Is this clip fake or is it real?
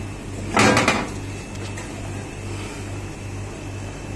real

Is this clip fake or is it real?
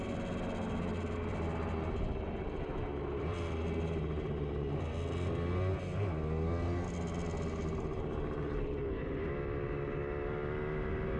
real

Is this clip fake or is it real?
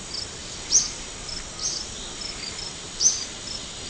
real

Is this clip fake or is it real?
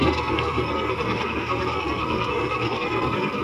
fake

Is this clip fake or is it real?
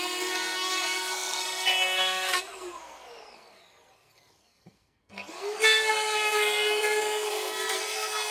fake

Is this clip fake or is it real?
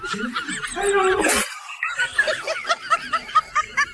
real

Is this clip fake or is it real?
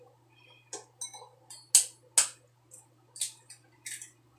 real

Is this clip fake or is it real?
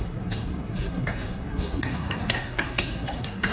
fake